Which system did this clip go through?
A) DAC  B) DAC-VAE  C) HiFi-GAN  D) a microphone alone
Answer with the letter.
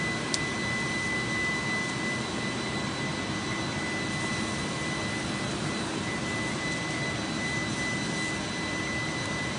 D